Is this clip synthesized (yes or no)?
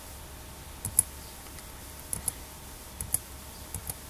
no